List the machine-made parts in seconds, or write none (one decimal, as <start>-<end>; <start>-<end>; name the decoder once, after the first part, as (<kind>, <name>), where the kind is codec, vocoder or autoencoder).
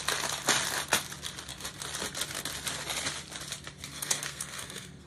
3.9-5.1 (codec, SNAC)